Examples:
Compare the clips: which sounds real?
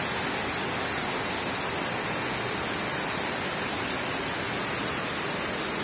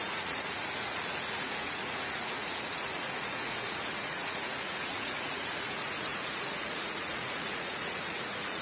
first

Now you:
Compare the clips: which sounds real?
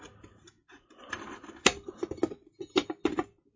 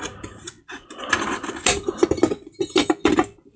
first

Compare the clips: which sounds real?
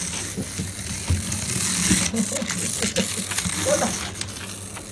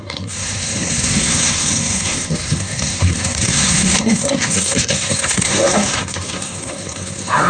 first